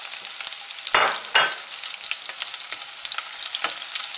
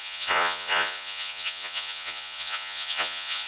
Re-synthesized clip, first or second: second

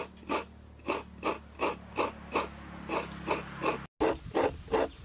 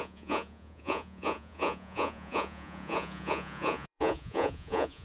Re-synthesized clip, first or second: second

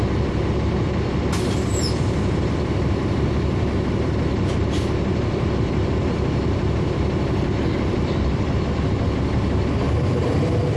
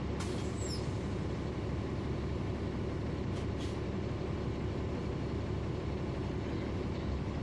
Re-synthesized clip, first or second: first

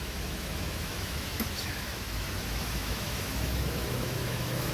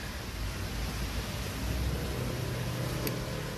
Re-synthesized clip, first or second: first